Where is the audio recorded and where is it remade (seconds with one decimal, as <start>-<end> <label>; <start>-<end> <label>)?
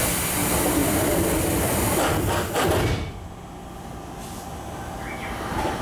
0.0-0.8 recorded; 0.8-3.7 remade; 3.7-5.8 recorded